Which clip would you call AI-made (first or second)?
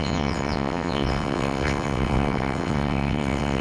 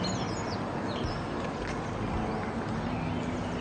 first